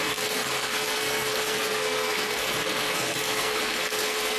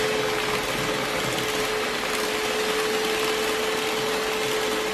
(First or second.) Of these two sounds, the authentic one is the second